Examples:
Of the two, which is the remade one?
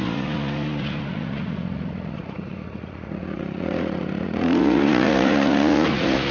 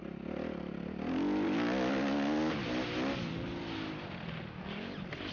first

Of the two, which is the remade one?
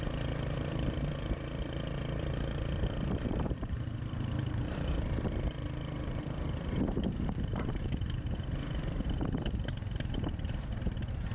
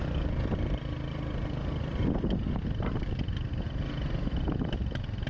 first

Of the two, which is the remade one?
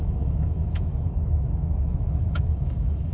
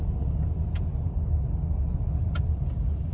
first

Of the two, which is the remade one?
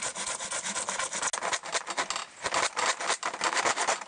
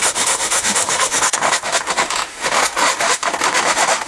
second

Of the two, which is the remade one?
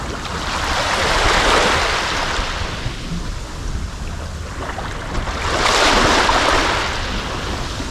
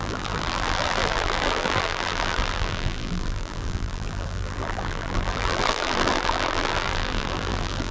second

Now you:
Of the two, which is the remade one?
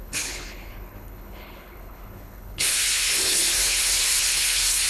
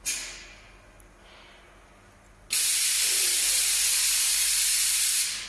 first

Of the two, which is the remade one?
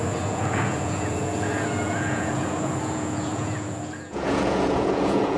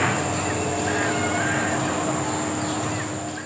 first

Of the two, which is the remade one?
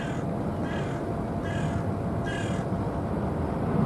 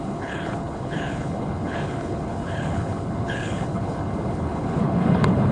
second